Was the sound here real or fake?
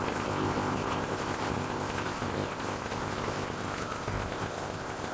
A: fake